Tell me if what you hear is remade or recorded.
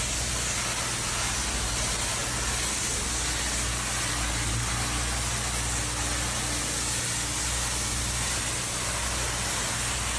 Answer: recorded